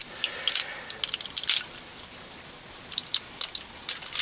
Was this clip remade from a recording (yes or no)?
no